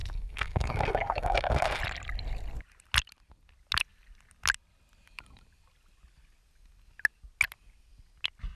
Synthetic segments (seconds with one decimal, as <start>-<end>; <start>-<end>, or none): 0.0-1.8